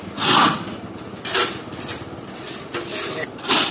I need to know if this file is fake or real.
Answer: real